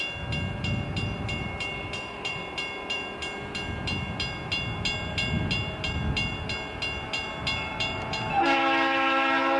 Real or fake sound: real